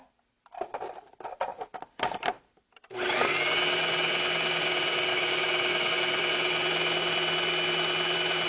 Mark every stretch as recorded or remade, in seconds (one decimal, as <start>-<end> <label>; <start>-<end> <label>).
0.0-5.1 recorded; 5.1-5.9 remade; 5.9-8.5 recorded